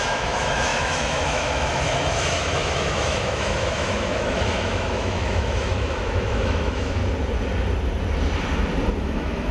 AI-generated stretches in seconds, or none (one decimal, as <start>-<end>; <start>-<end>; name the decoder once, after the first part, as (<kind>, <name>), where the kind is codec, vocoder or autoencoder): 0.0-7.0 (autoencoder, DAC-VAE); 9.0-9.5